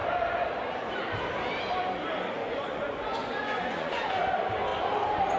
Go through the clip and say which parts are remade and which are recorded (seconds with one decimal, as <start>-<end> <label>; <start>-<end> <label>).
0.0-2.4 recorded; 2.4-4.1 remade; 4.1-5.4 recorded